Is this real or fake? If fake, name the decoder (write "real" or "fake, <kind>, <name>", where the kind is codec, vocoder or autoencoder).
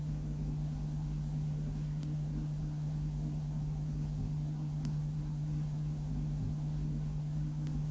fake, codec, SNAC